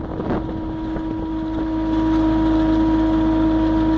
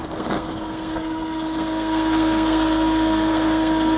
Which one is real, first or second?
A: first